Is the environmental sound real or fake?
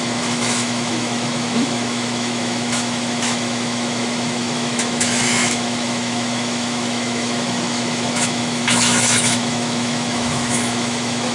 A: fake